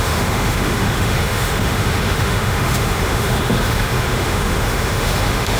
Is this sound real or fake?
fake